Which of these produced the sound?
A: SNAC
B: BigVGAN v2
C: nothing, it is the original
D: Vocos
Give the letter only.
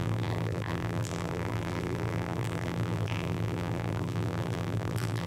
B